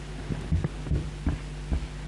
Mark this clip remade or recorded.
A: recorded